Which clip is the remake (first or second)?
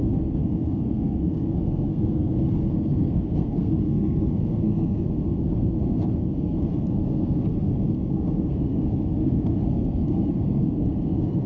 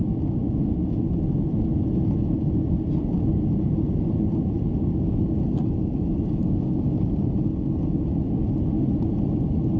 first